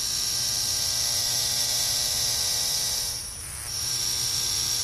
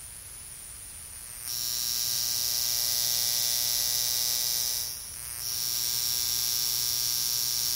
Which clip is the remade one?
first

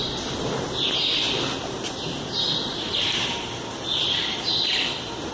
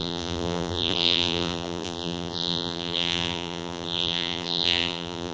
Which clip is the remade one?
second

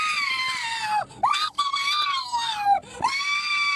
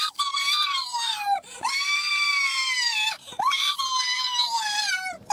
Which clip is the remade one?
second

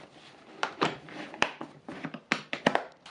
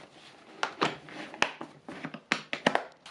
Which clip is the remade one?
first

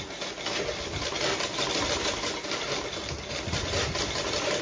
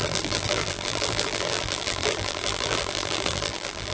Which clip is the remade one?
second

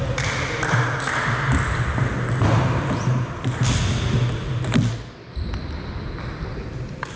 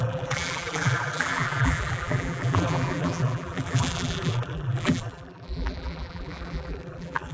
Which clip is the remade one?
second